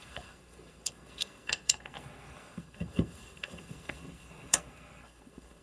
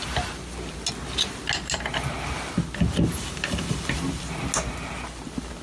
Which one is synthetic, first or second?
first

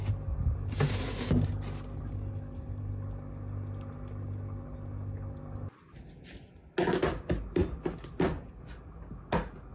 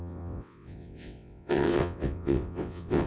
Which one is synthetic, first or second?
second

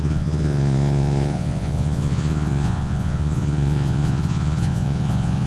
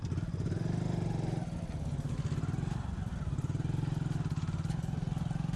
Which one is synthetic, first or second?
first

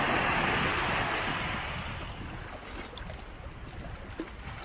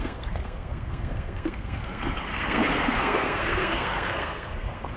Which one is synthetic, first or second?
second